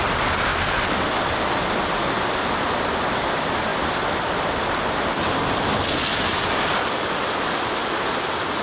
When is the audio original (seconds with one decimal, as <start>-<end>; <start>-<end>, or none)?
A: 0.0-8.6